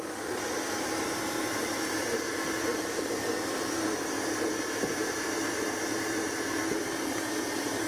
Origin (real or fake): fake